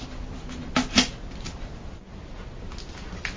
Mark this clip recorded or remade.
recorded